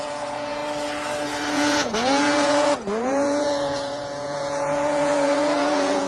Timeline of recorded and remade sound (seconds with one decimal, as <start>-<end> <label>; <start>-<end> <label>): 0.0-0.6 remade; 0.6-1.5 recorded; 1.5-6.1 remade